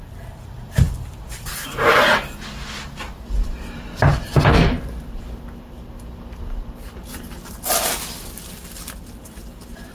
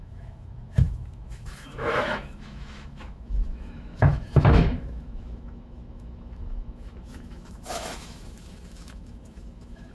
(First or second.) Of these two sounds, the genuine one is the first